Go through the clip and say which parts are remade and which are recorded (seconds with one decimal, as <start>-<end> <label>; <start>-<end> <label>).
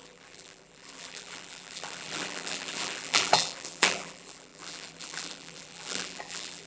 0.0-6.7 remade